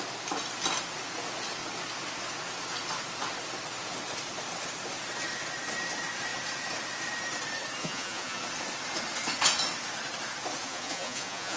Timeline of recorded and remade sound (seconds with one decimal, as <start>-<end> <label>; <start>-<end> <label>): 0.0-7.8 recorded; 7.8-8.4 remade; 8.4-10.6 recorded; 10.6-11.6 remade